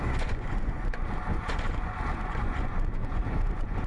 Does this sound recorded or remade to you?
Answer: remade